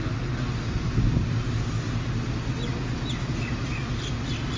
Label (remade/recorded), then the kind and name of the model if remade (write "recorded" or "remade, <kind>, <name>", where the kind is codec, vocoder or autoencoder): recorded